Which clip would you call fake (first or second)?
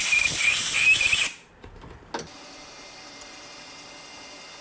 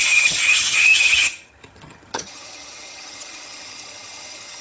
second